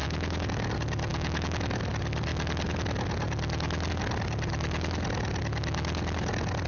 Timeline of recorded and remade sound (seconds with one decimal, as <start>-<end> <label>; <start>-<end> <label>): 0.0-0.7 remade; 0.7-1.1 recorded; 1.1-1.8 remade; 1.8-6.7 recorded